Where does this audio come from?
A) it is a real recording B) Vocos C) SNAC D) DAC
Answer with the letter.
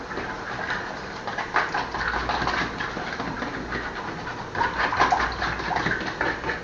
A